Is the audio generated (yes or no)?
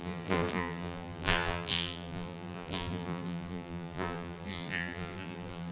yes